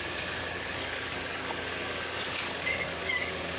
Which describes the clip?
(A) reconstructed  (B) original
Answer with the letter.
A